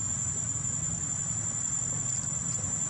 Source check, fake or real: real